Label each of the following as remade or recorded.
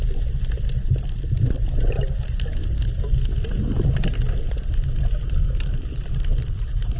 recorded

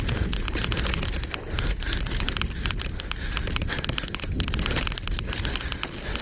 recorded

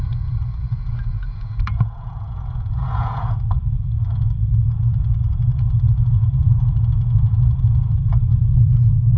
remade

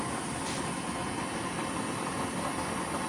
recorded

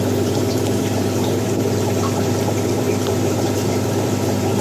remade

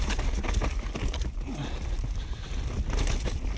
recorded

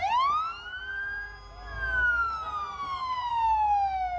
recorded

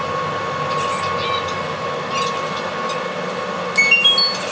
recorded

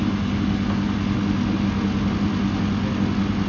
recorded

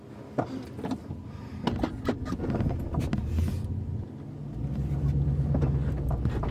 recorded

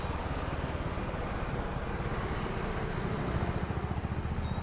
recorded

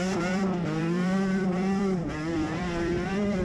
remade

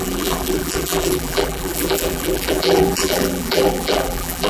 remade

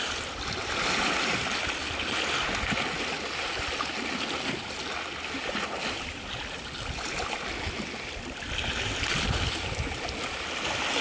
recorded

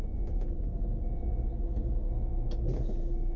recorded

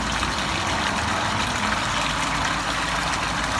recorded